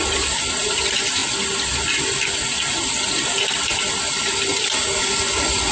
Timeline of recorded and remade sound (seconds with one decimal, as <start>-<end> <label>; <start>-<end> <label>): 0.0-5.7 recorded